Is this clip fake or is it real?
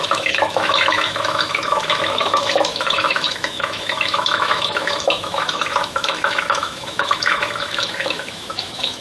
fake